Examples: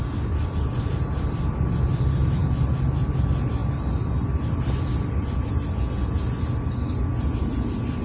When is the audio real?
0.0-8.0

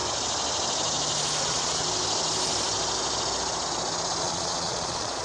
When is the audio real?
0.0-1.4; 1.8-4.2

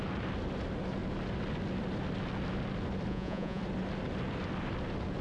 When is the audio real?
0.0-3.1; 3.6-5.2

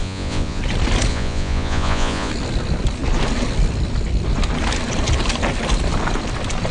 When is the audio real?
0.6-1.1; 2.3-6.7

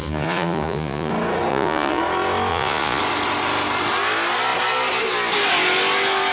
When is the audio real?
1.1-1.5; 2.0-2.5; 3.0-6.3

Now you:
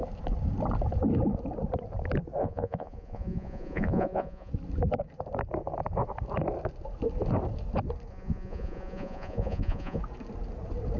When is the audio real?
0.0-2.4; 4.5-8.1; 10.0-11.0

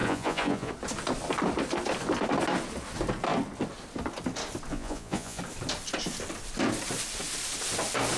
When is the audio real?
0.7-4.7; 5.4-8.2

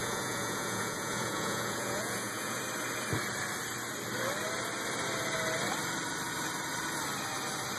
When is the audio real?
2.6-7.8